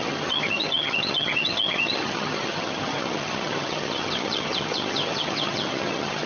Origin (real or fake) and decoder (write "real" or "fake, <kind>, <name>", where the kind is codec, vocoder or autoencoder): fake, vocoder, HiFi-GAN